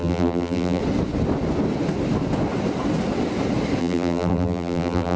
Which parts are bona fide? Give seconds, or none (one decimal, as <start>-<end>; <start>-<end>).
0.8-3.8